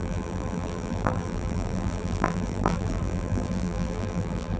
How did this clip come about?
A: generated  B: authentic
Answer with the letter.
A